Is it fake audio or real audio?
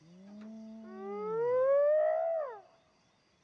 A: real